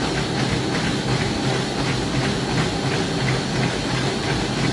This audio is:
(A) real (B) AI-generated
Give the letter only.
A